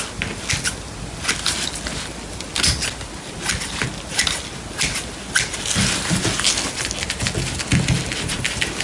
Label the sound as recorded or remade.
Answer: recorded